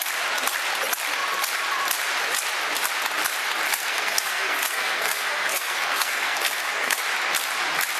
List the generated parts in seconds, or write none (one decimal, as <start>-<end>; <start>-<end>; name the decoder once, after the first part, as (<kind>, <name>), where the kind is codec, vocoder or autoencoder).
3.7-7.0 (codec, SNAC)